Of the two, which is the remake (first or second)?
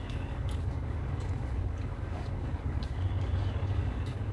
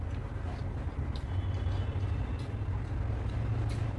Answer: first